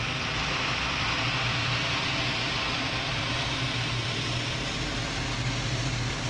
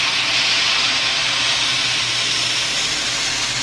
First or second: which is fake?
first